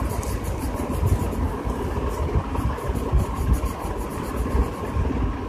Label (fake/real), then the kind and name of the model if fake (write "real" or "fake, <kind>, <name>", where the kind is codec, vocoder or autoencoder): real